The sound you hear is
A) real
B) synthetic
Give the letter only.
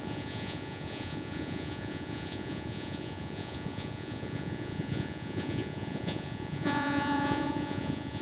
B